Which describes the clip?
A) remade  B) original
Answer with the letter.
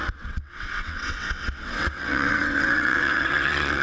A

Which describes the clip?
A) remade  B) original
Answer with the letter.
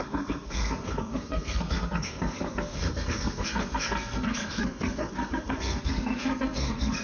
A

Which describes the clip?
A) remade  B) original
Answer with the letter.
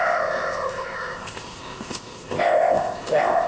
A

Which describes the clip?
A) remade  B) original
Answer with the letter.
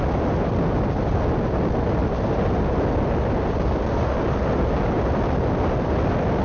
B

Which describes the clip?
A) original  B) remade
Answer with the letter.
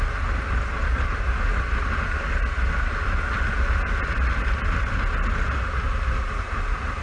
A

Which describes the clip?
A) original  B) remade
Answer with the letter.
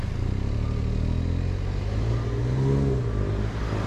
A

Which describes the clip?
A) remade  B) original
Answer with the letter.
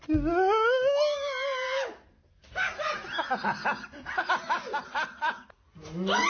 B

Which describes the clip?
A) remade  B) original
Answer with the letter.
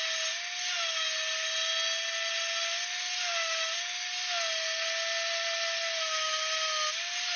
B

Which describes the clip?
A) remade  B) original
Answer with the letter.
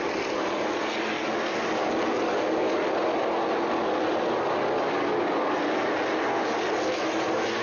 B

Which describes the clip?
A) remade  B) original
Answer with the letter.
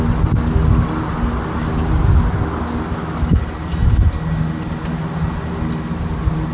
B